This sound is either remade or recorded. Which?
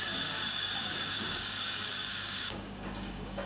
remade